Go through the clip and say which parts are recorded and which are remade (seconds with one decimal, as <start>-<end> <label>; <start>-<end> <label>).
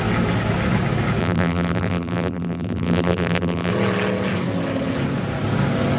0.0-1.2 recorded; 1.2-3.7 remade; 3.7-6.0 recorded